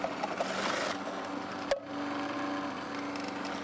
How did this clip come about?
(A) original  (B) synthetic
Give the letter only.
A